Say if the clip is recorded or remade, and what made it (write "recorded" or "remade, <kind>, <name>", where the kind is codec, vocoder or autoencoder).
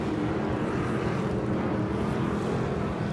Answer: recorded